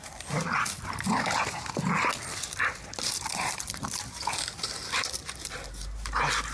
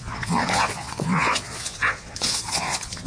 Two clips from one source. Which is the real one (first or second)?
first